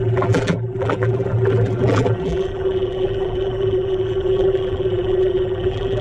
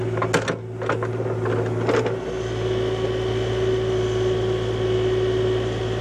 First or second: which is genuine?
second